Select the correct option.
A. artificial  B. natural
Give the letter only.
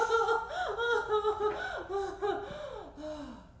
B